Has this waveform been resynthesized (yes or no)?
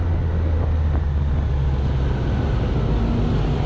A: no